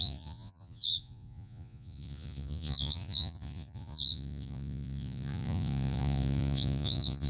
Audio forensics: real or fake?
fake